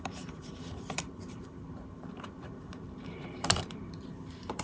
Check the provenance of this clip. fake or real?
fake